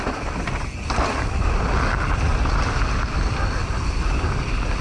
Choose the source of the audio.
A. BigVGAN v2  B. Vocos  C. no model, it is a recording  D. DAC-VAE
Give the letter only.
C